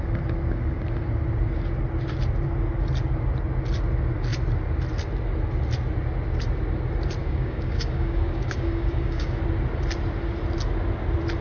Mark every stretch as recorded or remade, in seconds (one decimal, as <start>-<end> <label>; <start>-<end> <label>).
0.0-7.2 recorded; 7.2-9.4 remade; 9.4-11.4 recorded